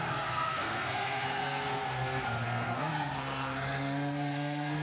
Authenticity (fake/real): fake